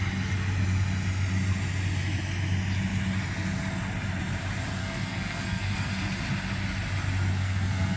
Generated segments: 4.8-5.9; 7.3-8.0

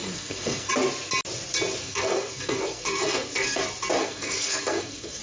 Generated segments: 0.0-0.7; 1.8-3.6; 4.0-5.2

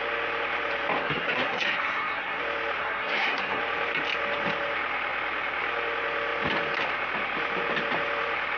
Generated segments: 1.0-2.4; 2.8-3.6